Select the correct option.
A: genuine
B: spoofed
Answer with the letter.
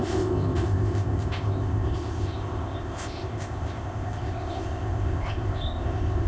B